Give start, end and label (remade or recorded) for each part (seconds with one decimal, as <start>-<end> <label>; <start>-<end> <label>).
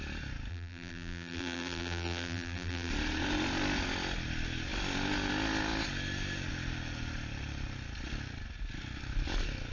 0.0-0.5 recorded; 0.5-2.9 remade; 2.9-9.7 recorded